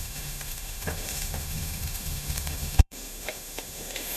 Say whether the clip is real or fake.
fake